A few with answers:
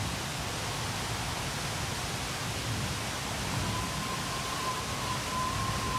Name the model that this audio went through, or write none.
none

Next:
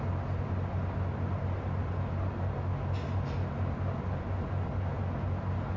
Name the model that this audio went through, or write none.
none